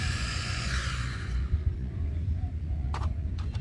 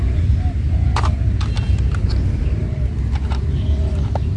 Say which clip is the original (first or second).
second